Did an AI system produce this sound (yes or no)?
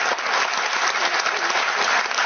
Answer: no